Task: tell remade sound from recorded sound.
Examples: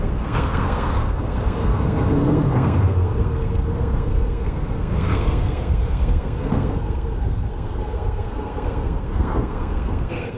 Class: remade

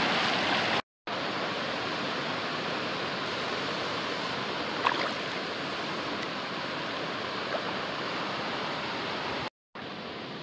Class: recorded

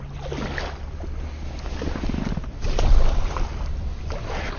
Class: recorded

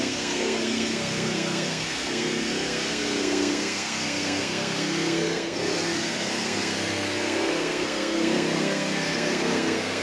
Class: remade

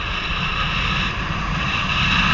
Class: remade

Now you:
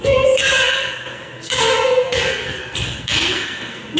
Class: remade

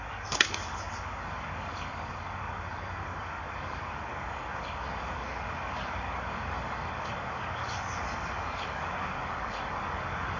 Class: remade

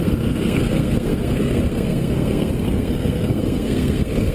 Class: remade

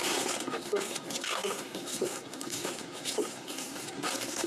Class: remade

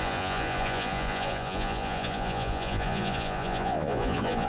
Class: remade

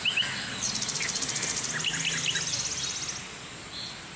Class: recorded